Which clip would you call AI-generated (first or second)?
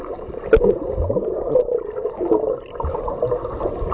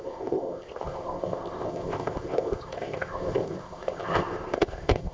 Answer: second